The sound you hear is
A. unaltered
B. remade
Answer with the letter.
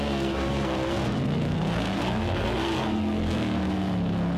B